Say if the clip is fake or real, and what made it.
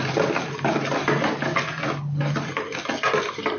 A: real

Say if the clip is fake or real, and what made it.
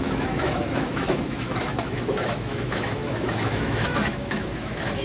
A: fake, autoencoder, DAC-VAE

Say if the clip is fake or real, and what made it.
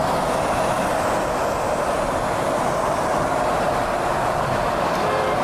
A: real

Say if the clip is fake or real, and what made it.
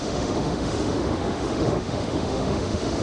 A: fake, autoencoder, DAC-VAE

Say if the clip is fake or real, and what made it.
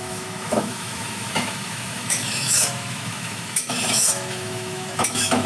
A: fake, autoencoder, DAC-VAE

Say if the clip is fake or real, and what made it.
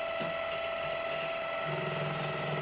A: real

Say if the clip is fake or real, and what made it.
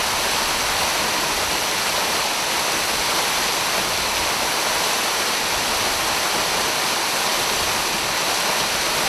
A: real